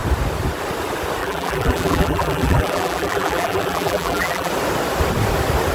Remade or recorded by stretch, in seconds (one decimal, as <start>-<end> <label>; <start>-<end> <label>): 0.0-1.2 recorded; 1.2-4.5 remade; 4.5-5.7 recorded